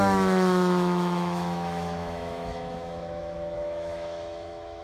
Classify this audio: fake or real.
fake